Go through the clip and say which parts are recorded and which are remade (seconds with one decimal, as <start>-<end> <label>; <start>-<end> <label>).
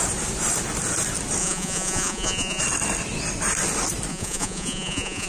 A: 0.0-1.4 recorded; 1.4-2.6 remade; 2.6-4.1 recorded; 4.1-5.3 remade